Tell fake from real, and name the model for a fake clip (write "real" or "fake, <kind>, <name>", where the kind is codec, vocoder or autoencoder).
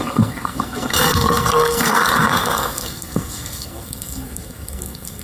fake, codec, SNAC